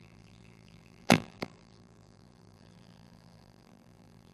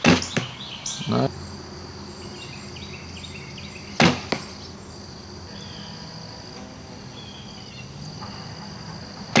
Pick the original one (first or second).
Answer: second